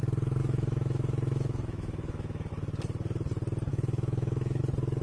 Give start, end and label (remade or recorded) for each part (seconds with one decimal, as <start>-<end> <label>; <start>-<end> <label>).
0.0-0.4 recorded; 0.4-2.5 remade; 2.5-3.7 recorded; 3.7-4.6 remade; 4.6-5.0 recorded